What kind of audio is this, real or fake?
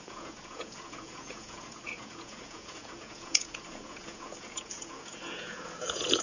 fake